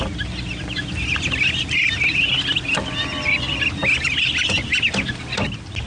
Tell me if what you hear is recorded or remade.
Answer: recorded